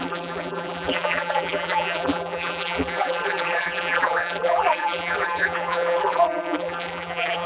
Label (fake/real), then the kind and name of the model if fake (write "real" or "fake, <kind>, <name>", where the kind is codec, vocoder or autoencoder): fake, vocoder, BigVGAN v2